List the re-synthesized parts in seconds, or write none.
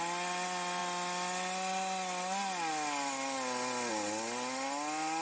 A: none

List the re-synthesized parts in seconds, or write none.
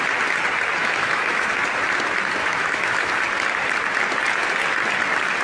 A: 0.8-1.5; 2.4-3.1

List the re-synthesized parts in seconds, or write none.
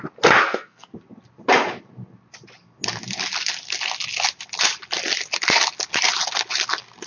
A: 0.4-0.9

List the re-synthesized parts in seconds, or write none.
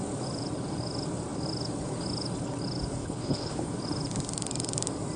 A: 3.0-3.7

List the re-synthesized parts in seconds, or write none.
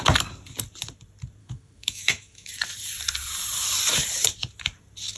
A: 1.4-2.5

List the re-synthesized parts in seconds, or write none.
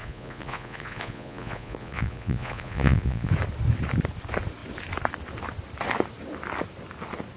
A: 0.0-3.3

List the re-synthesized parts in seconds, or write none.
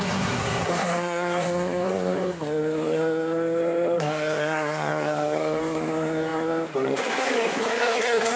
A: 0.0-8.4